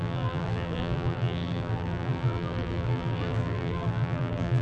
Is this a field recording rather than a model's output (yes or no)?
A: no